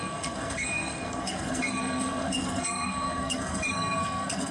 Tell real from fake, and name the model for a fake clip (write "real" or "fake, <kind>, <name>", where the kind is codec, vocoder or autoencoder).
fake, codec, SNAC